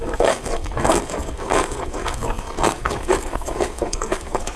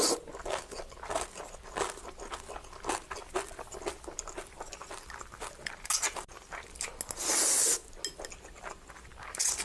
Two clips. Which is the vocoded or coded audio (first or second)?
first